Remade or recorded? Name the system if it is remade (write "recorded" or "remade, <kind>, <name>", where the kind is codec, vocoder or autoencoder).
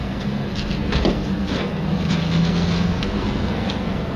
remade, codec, SNAC